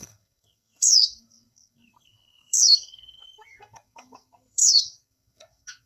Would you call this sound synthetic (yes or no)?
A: yes